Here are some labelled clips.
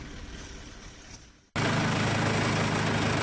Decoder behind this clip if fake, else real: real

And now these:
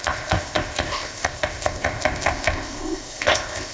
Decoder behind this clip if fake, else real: fake, codec, ZipCodec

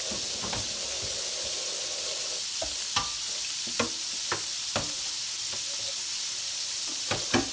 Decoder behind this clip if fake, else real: real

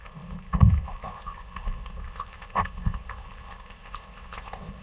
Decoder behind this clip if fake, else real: fake, codec, ZipCodec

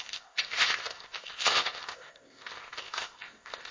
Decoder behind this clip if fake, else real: fake, codec, ZipCodec